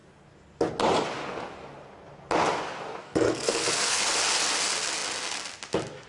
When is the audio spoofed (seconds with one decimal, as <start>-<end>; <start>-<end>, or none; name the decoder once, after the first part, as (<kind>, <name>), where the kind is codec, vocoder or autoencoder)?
3.0-4.0 (codec, SNAC)